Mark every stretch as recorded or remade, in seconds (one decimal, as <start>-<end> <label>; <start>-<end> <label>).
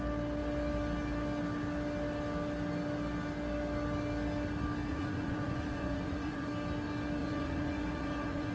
0.0-4.9 recorded; 4.9-6.5 remade; 6.5-7.2 recorded; 7.2-8.5 remade